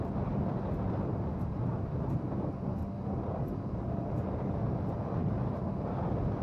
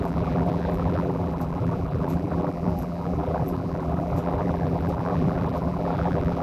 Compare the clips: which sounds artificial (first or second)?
second